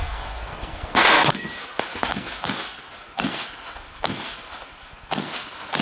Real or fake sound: fake